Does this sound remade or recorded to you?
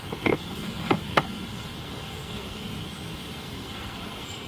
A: remade